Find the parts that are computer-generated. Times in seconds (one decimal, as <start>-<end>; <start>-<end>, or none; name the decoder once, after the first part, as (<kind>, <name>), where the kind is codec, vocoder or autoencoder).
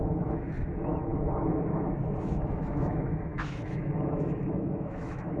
0.0-1.1 (autoencoder, DAC-VAE); 2.2-5.4